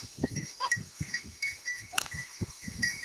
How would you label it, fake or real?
fake